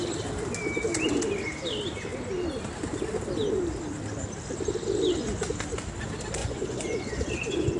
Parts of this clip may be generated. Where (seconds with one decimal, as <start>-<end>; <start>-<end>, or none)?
6.4-7.8